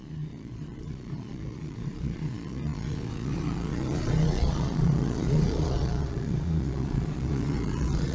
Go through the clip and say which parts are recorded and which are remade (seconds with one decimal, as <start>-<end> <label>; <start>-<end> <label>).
0.0-8.1 remade

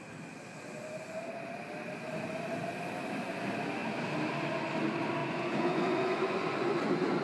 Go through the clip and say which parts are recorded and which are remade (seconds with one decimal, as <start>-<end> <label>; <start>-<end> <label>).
0.0-5.2 recorded; 5.2-7.2 remade

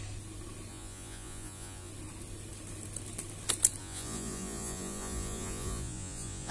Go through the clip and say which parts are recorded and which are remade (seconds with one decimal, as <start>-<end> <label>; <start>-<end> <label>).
0.0-0.7 recorded; 0.7-1.9 remade; 1.9-3.8 recorded; 3.8-6.5 remade

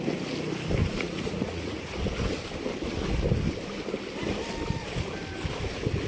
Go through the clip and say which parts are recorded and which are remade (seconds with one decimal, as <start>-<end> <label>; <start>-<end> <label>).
0.0-0.8 recorded; 0.8-2.0 remade; 2.0-6.1 recorded

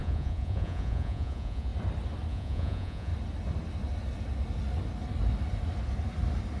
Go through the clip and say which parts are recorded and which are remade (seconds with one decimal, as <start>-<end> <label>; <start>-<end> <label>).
0.0-1.7 remade; 1.7-2.3 recorded; 2.3-3.1 remade; 3.1-6.6 recorded

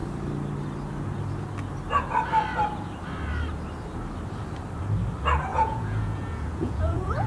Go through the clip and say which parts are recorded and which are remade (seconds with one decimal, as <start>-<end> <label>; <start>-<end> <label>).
0.0-5.5 recorded; 5.5-7.3 remade

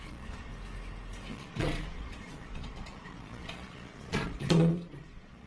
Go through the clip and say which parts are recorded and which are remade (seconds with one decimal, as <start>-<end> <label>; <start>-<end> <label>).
0.0-0.5 remade; 0.5-1.3 recorded; 1.3-5.5 remade

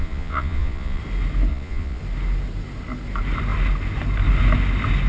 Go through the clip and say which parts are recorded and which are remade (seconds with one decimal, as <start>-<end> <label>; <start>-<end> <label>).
0.0-1.0 remade; 1.0-1.5 recorded; 1.5-2.0 remade; 2.0-5.1 recorded